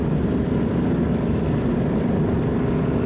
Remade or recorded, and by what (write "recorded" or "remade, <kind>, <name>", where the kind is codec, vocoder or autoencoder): recorded